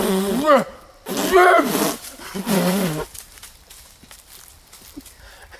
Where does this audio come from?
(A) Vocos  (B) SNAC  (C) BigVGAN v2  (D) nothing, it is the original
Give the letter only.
D